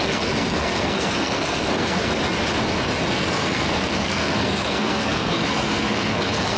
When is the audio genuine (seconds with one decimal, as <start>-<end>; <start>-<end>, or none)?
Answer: 2.2-3.1